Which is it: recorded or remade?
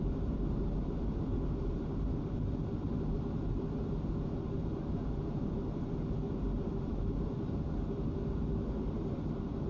remade